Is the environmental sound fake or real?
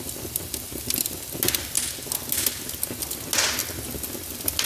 real